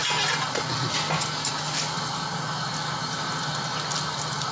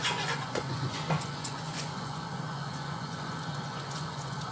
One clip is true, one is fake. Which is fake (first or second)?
second